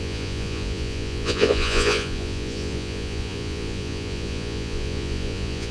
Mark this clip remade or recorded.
remade